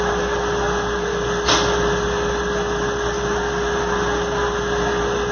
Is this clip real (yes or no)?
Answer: yes